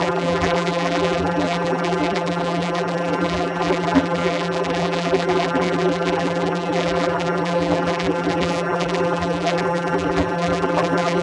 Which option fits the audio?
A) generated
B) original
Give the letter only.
A